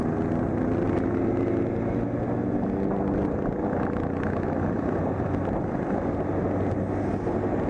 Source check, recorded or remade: recorded